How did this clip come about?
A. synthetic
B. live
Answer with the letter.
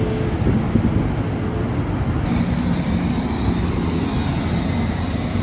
B